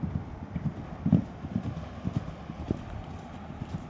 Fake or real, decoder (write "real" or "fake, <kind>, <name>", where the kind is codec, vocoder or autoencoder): real